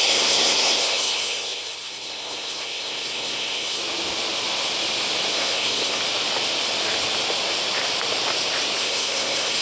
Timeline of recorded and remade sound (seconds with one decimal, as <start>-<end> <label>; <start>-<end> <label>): 0.0-3.8 remade; 3.8-5.3 recorded; 5.3-6.0 remade; 6.0-8.8 recorded; 8.8-9.6 remade